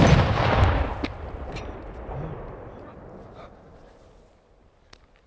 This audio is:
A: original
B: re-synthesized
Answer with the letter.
A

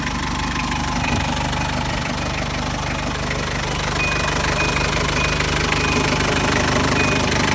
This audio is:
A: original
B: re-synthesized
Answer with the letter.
A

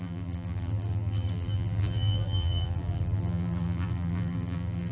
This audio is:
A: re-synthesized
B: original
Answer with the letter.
A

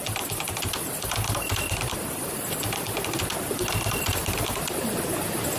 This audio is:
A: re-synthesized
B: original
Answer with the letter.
A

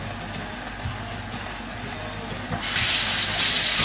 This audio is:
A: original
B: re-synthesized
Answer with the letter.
A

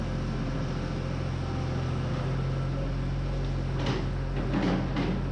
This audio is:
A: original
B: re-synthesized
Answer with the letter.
A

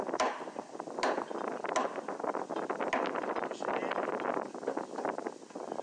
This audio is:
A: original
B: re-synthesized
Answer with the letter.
A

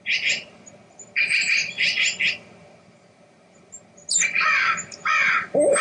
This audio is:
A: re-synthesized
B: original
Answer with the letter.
B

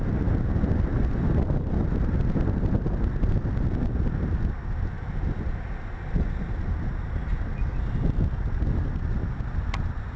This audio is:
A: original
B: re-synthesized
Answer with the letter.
A